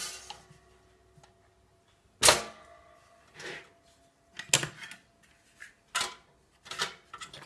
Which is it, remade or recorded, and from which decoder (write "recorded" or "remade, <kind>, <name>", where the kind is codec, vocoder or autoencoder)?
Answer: recorded